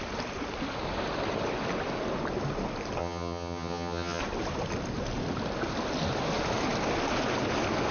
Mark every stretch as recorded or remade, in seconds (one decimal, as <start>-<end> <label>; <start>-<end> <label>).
0.0-3.0 recorded; 3.0-4.2 remade; 4.2-7.9 recorded